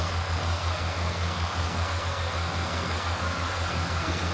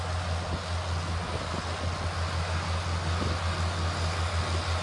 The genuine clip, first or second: second